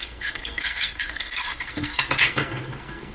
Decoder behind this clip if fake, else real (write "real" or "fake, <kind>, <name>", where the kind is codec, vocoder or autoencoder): fake, codec, SNAC